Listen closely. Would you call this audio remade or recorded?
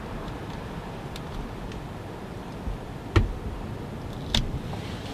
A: recorded